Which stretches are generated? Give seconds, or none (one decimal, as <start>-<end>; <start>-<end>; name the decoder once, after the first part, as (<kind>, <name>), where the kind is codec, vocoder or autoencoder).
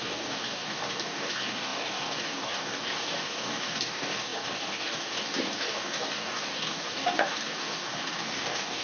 0.0-8.8 (codec, DAC)